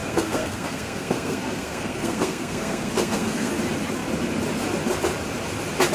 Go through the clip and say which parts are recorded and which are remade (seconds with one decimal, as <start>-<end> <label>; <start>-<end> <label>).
0.0-3.5 remade; 3.5-5.9 recorded